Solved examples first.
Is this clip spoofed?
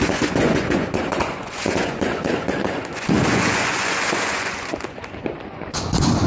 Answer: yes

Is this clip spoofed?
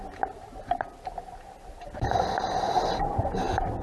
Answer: no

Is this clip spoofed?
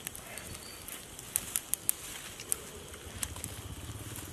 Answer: no